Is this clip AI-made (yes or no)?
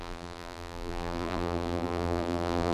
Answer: yes